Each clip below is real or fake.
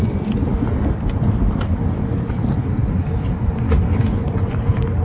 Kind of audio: real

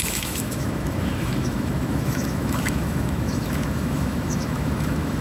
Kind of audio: fake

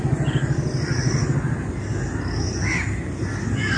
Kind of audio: real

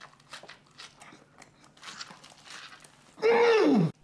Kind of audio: real